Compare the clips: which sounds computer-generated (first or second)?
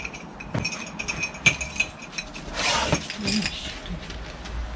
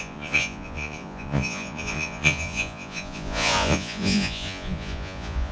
second